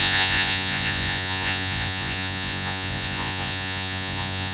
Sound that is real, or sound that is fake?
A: fake